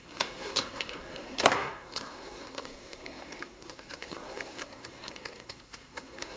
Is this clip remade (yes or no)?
yes